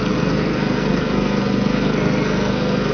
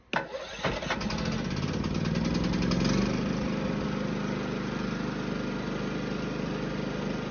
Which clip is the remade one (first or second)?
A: first